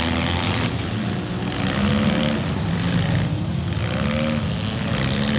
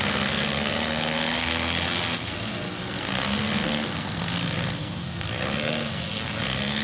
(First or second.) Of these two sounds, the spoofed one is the second